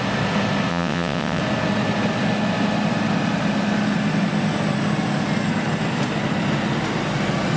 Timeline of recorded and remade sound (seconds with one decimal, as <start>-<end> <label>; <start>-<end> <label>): 0.0-0.7 recorded; 0.7-1.4 remade; 1.4-7.6 recorded